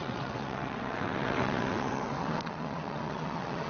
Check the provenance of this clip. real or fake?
fake